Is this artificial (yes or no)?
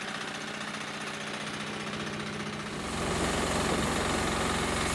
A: no